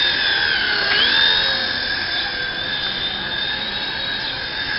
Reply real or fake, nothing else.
real